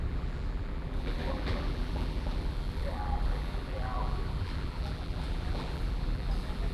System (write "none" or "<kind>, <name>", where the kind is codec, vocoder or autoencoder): vocoder, BigVGAN v2